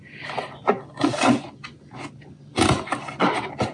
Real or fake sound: real